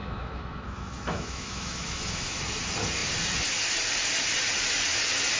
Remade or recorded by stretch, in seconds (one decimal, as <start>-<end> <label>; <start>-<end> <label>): 0.0-2.4 remade; 2.4-5.4 recorded